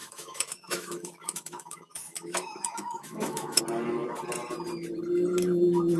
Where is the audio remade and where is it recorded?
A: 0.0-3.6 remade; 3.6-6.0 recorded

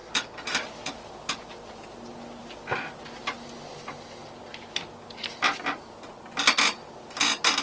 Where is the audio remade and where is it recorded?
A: 0.0-7.6 recorded

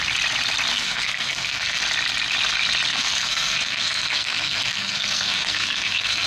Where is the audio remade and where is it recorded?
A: 0.0-0.7 recorded; 0.7-1.8 remade; 1.8-2.9 recorded; 2.9-6.3 remade